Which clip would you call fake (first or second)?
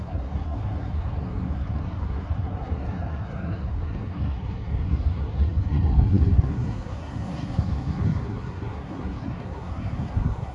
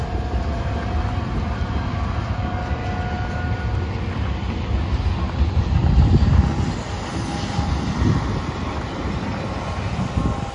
first